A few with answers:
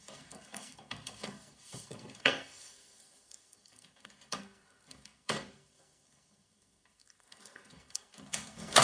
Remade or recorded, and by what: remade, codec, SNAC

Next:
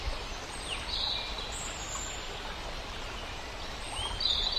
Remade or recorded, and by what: recorded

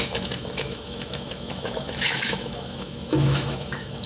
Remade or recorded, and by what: remade, autoencoder, DAC-VAE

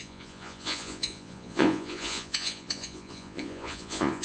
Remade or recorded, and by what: remade, vocoder, Vocos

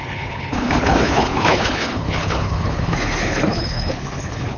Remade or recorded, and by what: remade, codec, HILCodec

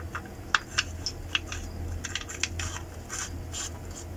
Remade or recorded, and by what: recorded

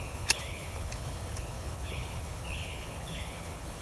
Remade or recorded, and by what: remade, codec, HILCodec